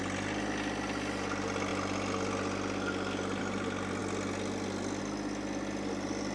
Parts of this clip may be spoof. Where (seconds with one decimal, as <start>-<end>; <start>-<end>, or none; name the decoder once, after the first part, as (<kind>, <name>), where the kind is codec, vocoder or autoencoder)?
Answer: none